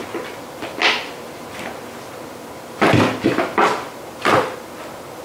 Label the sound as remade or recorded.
recorded